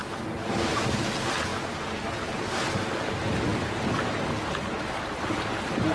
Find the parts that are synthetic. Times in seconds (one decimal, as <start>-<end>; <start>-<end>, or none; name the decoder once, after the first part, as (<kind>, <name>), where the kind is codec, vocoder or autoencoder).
none